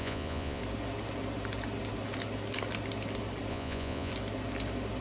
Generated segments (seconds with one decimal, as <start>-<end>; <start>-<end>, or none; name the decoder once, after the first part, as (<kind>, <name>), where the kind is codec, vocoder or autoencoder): 0.0-0.6 (vocoder, Vocos); 3.5-4.1